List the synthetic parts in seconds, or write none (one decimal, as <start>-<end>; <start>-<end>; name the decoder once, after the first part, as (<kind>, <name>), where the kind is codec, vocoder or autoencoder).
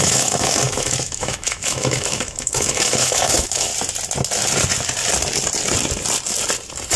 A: 0.0-3.7 (autoencoder, DAC-VAE)